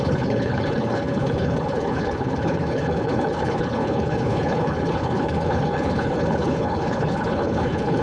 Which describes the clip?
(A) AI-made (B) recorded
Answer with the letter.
A